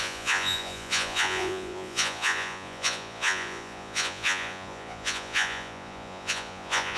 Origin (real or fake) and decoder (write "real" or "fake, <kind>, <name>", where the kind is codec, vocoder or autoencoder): fake, vocoder, Vocos